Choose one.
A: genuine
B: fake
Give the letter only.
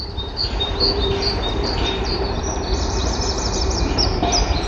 B